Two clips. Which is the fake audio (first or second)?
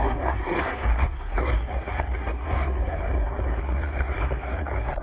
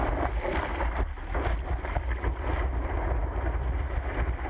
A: first